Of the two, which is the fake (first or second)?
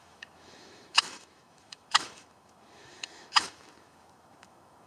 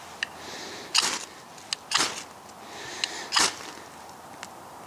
first